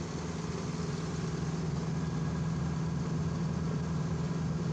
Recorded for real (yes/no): yes